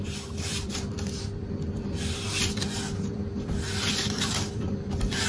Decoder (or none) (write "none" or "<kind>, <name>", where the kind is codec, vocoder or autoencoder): vocoder, BigVGAN v2